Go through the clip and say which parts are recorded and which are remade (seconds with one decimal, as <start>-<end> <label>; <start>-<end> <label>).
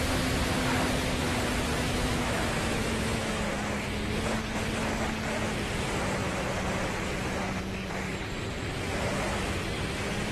0.0-1.7 recorded; 1.7-3.3 remade; 3.3-10.3 recorded